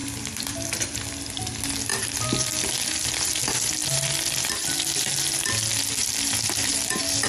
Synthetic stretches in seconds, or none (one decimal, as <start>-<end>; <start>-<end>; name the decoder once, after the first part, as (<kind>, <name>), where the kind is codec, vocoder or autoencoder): 0.0-1.5 (vocoder, BigVGAN v2); 1.9-2.5; 3.8-5.1; 6.0-6.7